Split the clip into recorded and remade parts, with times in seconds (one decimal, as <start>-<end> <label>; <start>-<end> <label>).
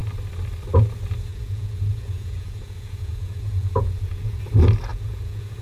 0.0-1.3 recorded; 1.3-4.4 remade; 4.4-4.9 recorded; 4.9-5.6 remade